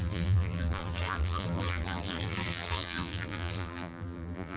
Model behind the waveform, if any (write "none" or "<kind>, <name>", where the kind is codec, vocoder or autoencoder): vocoder, BigVGAN v2